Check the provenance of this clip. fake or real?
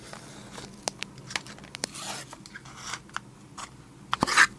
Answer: real